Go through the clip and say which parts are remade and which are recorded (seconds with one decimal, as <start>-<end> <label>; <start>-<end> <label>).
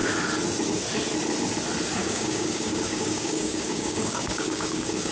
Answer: 0.0-2.0 recorded; 2.0-5.1 remade